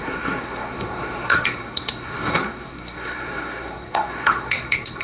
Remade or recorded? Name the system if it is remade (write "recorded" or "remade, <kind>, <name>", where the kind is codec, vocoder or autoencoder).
remade, codec, SNAC